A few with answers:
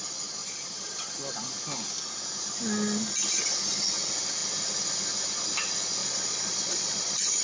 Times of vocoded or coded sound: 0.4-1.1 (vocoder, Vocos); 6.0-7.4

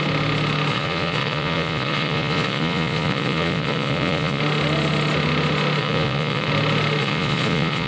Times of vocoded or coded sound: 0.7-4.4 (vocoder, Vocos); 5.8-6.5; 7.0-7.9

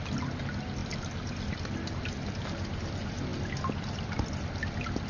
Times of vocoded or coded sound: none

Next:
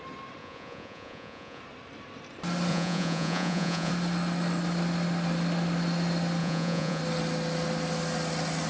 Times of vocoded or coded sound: 0.4-1.6 (vocoder, Vocos); 2.7-3.9; 6.4-7.0

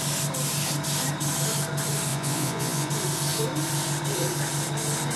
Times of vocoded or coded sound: 2.1-2.9 (vocoder, Vocos)

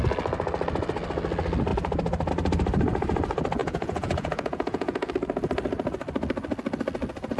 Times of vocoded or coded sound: 3.6-5.1 (vocoder, Vocos)

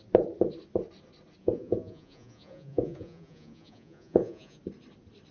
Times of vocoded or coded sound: 1.4-4.6 (vocoder, Vocos)